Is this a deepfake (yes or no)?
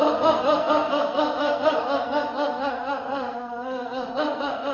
yes